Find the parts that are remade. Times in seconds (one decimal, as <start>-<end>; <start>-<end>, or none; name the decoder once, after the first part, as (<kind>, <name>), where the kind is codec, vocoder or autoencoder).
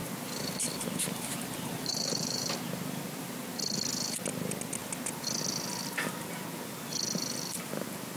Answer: 0.0-2.6 (vocoder, BigVGAN v2)